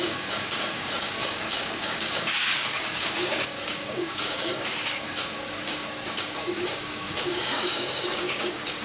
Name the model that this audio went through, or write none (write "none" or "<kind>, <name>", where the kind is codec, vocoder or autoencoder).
codec, DAC